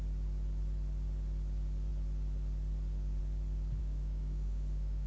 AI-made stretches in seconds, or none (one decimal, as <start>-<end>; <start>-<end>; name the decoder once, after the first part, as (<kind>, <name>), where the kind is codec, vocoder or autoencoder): 3.8-5.1 (autoencoder, DAC-VAE)